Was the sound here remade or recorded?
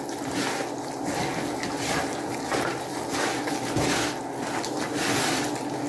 recorded